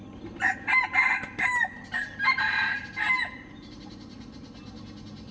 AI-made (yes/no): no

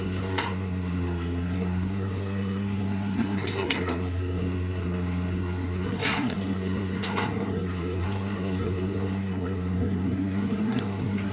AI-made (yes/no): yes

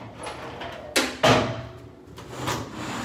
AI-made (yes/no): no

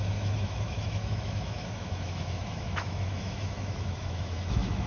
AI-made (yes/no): yes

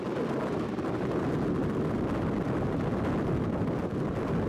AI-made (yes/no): no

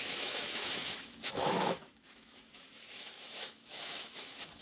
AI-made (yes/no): yes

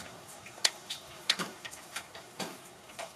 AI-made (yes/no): yes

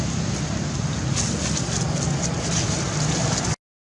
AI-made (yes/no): no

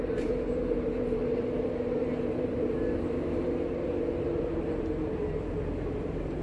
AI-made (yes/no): yes